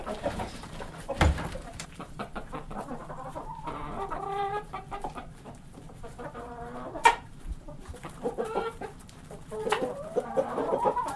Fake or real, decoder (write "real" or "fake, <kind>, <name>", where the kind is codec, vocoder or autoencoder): fake, vocoder, BigVGAN v2